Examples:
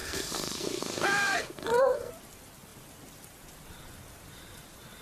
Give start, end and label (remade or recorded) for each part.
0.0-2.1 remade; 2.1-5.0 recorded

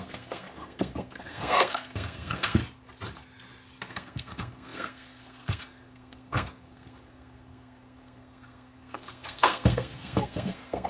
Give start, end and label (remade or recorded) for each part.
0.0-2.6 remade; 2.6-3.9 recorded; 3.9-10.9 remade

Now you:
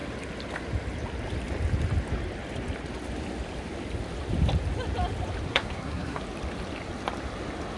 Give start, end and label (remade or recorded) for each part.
0.0-5.5 recorded; 5.5-6.2 remade; 6.2-7.8 recorded

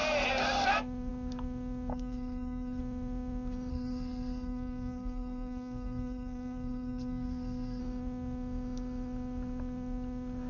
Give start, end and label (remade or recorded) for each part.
0.0-1.9 recorded; 1.9-2.8 remade; 2.8-3.7 recorded; 3.7-7.8 remade; 7.8-10.5 recorded

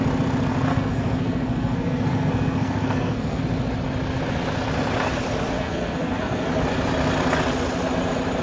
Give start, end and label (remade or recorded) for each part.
0.0-0.5 recorded; 0.5-3.4 remade; 3.4-5.5 recorded; 5.5-6.5 remade; 6.5-8.4 recorded

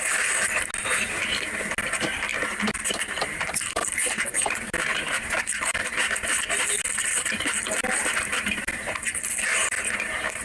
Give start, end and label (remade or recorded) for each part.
0.0-10.4 recorded